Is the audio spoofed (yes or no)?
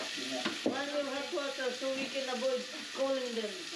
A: no